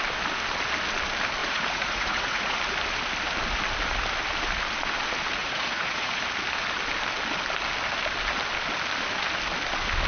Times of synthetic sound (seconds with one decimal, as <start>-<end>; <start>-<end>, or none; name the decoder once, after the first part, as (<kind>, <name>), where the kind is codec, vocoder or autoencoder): 1.4-2.6 (vocoder, Vocos); 5.4-6.2